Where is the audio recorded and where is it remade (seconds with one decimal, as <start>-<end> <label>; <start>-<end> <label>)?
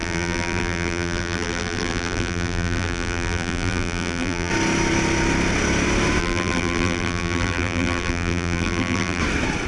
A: 0.0-4.5 remade; 4.5-6.2 recorded; 6.2-9.2 remade; 9.2-9.7 recorded